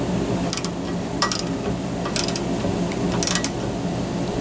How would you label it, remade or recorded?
recorded